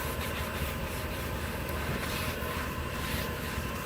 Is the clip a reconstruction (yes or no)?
yes